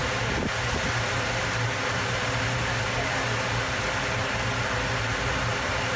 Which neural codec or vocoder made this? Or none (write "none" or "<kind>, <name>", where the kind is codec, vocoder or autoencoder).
none